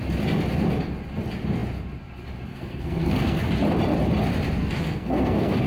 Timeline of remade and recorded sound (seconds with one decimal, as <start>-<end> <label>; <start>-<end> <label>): 0.0-2.5 recorded; 2.5-3.5 remade; 3.5-4.6 recorded; 4.6-5.7 remade